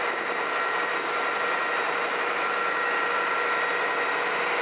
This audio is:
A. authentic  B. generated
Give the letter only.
A